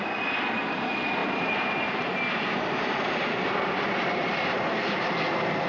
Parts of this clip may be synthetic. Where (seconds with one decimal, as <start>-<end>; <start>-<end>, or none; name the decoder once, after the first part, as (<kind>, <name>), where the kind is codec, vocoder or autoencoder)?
1.2-4.6 (vocoder, BigVGAN v2)